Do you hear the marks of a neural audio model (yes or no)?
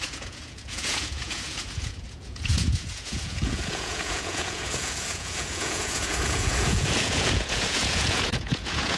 yes